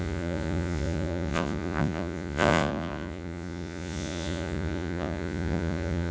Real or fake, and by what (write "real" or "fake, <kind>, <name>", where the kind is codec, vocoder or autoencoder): fake, vocoder, Vocos